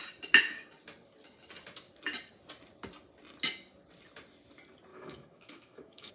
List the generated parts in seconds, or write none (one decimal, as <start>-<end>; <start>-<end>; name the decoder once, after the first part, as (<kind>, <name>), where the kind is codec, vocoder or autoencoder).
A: 4.9-6.1 (autoencoder, DAC-VAE)